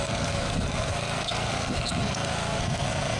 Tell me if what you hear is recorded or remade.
remade